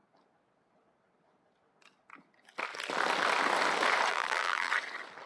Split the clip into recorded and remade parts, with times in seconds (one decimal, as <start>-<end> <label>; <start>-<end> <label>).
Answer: 0.0-4.1 recorded; 4.1-4.7 remade; 4.7-5.3 recorded